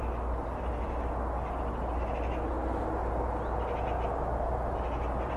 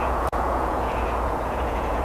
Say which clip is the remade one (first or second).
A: second